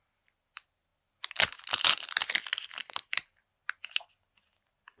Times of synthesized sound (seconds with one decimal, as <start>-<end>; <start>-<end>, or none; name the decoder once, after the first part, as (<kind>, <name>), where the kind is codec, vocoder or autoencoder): none